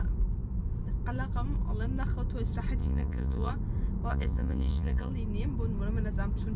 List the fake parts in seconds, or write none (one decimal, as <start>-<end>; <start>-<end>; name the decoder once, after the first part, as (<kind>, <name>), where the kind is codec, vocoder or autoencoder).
2.8-3.5 (vocoder, Vocos); 4.1-5.1